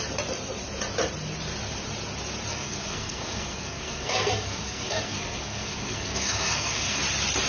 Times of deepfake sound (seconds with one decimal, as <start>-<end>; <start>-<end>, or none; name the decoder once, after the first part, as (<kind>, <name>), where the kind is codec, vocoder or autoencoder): 2.5-7.0 (codec, SNAC)